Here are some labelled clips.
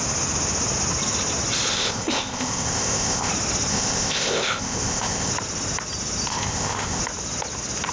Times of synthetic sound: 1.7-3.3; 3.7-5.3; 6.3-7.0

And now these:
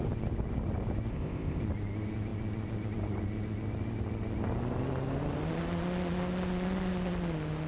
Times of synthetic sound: 1.1-1.6